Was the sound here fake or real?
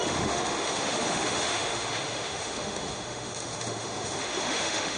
fake